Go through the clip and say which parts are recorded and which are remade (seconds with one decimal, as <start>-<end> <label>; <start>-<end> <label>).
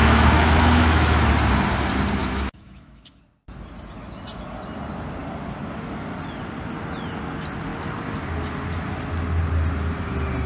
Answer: 0.0-1.2 remade; 1.2-2.2 recorded; 2.2-3.2 remade; 3.2-10.5 recorded